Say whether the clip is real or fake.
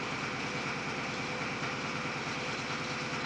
real